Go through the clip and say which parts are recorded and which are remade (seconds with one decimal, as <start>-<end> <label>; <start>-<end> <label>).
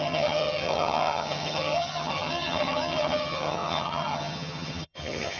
0.0-5.4 remade